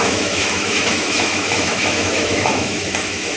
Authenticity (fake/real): fake